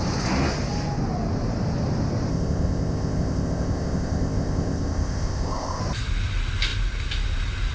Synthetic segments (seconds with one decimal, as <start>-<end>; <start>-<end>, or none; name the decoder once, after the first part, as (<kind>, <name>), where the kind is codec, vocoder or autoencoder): 2.3-5.8 (codec, ZipCodec)